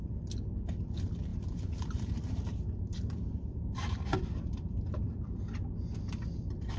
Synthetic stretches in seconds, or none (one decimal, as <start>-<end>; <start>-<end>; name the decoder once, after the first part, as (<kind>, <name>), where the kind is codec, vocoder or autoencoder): 1.3-5.4 (vocoder, BigVGAN v2)